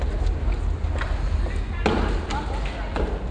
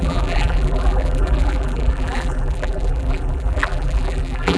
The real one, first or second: first